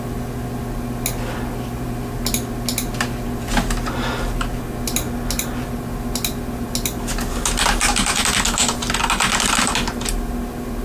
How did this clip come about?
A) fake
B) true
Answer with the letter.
B